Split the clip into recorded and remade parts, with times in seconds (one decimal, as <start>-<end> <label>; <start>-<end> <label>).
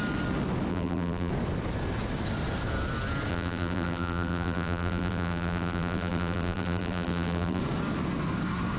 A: 0.0-0.7 recorded; 0.7-1.3 remade; 1.3-3.3 recorded; 3.3-7.6 remade; 7.6-8.8 recorded